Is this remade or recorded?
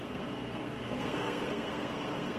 remade